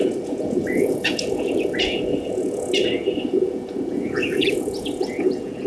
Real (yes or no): no